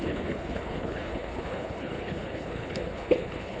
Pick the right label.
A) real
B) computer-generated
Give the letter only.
B